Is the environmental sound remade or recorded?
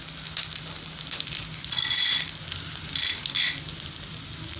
recorded